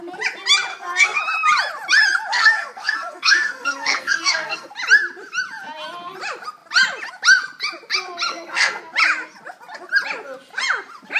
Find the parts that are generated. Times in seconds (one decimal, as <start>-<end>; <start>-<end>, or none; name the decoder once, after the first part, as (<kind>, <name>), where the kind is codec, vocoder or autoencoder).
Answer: 0.7-1.2 (codec, SNAC); 2.3-4.7; 8.3-8.8